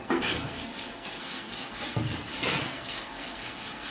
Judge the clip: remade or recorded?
remade